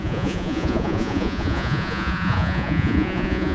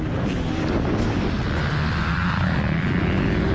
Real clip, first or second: second